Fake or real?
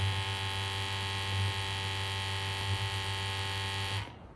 real